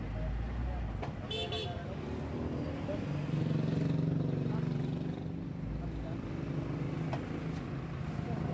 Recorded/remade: recorded